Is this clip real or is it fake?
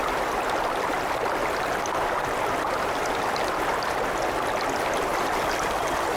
real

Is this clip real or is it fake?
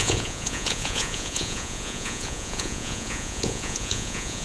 fake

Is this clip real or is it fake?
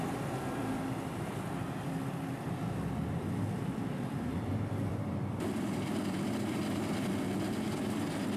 fake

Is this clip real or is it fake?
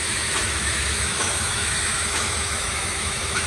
fake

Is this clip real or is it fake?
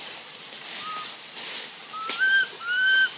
fake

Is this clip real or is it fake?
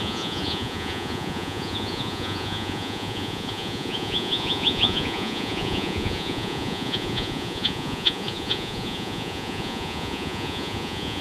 fake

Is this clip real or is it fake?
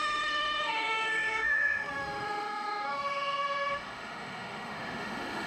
fake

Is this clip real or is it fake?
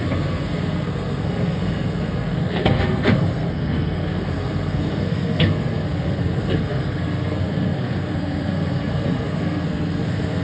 fake